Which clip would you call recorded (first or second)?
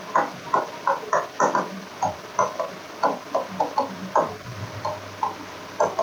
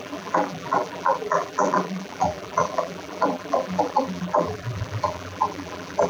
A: first